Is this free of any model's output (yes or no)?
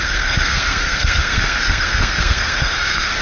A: no